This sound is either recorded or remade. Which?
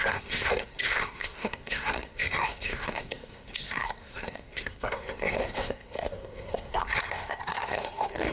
remade